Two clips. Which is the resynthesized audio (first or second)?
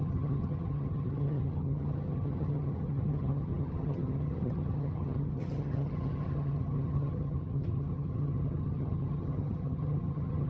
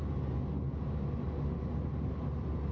first